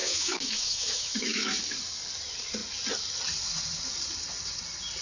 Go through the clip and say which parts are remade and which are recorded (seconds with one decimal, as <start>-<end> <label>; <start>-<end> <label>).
0.0-1.6 remade; 1.6-5.0 recorded